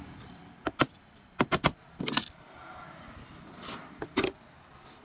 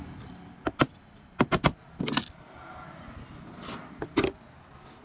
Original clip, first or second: second